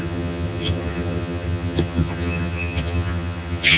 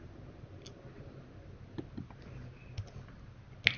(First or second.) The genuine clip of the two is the second